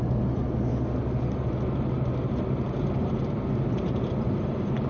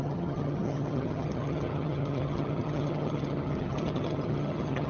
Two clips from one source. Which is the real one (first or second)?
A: first